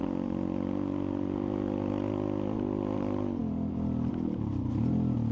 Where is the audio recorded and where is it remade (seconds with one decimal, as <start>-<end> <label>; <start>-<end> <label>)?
0.0-5.3 recorded